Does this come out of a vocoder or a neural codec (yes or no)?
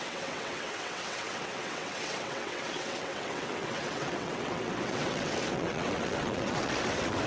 yes